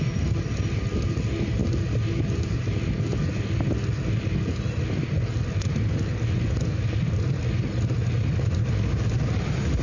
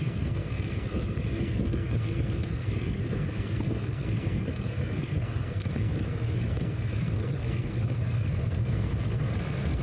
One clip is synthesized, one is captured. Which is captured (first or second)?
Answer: first